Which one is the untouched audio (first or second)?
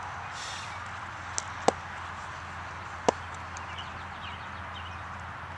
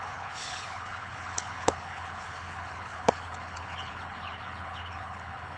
first